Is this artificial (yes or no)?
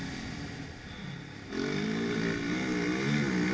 no